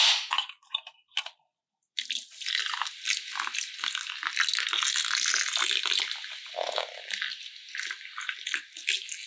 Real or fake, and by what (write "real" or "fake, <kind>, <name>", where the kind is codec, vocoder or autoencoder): real